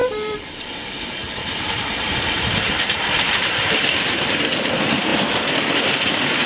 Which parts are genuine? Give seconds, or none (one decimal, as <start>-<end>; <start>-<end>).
5.1-6.5